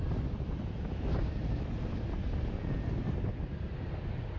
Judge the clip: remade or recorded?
recorded